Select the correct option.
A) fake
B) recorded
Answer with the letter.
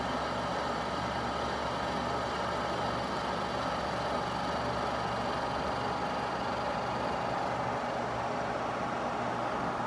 B